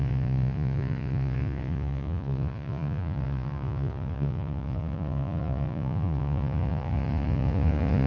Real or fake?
fake